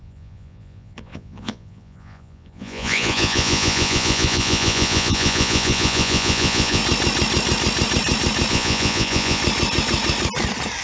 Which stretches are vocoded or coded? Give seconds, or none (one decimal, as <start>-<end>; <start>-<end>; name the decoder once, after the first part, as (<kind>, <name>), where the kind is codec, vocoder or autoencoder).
0.0-6.8 (vocoder, Vocos); 8.5-9.4